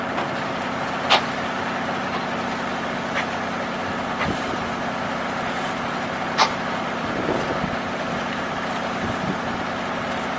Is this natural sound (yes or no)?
yes